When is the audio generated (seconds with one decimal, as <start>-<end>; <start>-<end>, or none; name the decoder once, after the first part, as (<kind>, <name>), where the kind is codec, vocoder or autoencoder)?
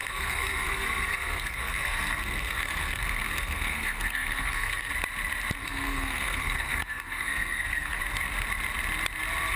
0.0-4.9 (codec, SNAC); 5.6-8.0